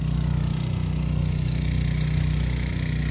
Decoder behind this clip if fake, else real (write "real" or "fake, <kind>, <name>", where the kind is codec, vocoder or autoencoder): real